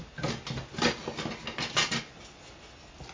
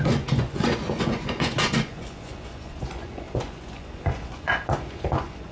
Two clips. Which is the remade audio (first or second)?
second